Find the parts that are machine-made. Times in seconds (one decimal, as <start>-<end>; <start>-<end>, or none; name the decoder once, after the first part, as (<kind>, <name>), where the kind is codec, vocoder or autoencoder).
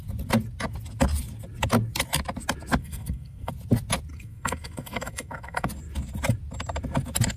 2.8-3.5 (codec, SNAC); 4.1-5.7